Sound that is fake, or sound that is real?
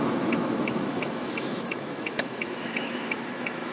fake